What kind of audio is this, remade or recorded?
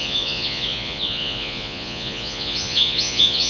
remade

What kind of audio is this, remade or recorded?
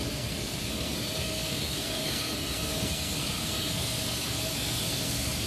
remade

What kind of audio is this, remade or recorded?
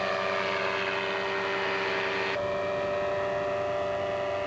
recorded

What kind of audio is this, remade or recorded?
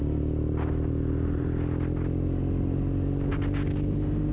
recorded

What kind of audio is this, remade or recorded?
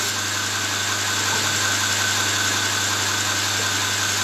recorded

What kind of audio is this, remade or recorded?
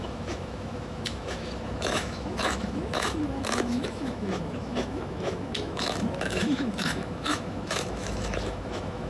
remade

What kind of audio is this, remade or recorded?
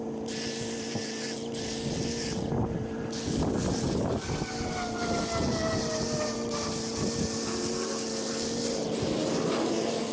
recorded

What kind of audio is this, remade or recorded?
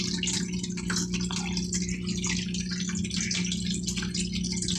recorded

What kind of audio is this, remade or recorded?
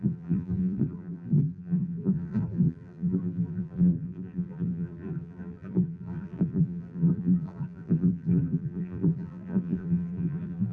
remade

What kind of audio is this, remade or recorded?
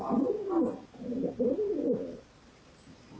remade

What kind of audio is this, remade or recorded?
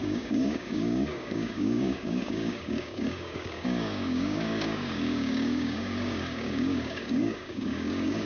remade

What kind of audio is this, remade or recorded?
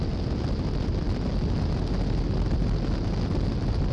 recorded